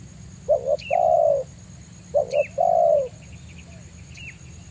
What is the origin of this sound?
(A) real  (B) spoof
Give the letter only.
A